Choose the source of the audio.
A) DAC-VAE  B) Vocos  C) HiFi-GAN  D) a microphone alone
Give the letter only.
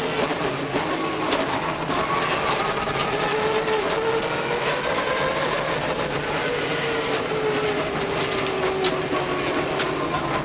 D